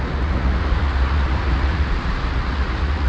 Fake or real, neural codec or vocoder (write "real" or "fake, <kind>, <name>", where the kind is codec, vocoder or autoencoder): fake, vocoder, Vocos